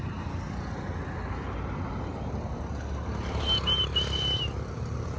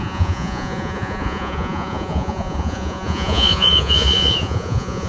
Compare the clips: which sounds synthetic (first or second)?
second